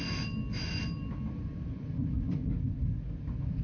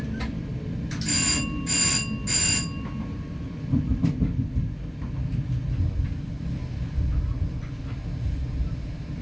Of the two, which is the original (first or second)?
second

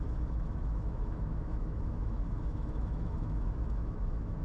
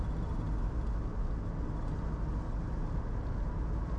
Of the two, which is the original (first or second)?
second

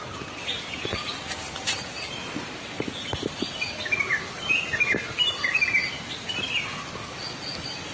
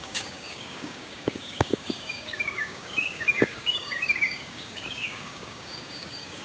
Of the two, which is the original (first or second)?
first